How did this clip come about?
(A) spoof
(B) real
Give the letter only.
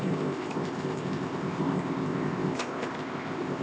A